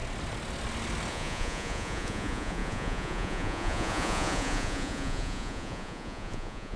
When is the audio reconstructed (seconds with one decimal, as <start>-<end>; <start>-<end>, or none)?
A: 1.1-6.8